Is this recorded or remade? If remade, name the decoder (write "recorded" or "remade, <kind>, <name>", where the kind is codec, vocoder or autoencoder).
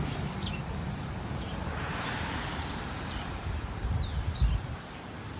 remade, vocoder, BigVGAN v2